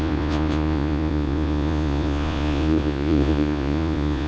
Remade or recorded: remade